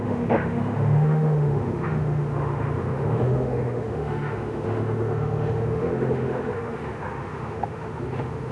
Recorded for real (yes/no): no